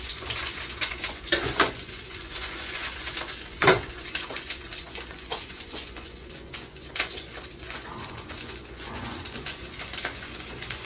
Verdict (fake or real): fake